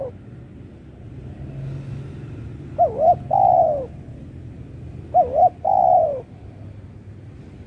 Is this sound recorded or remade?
recorded